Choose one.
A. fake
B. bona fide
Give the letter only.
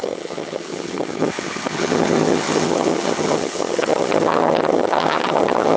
A